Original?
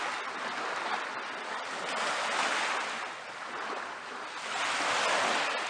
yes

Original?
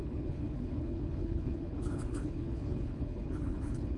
no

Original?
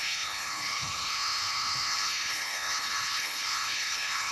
no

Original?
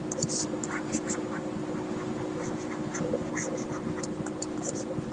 yes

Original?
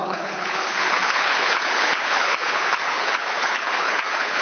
no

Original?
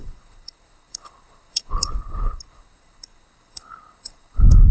no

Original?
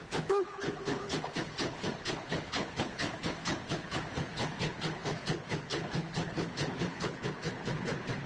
no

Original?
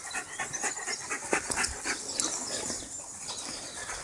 yes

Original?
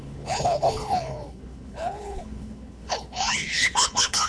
no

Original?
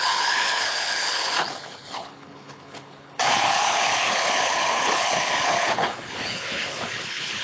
no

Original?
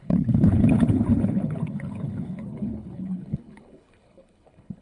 no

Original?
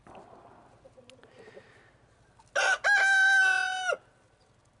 yes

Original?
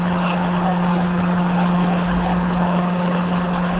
no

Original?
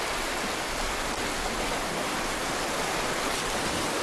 yes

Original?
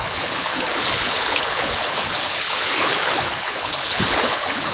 no